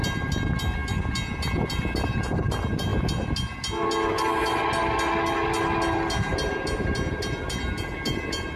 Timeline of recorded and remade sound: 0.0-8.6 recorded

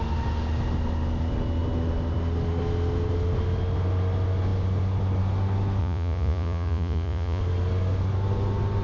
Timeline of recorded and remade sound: 0.0-5.8 recorded; 5.8-7.4 remade; 7.4-8.8 recorded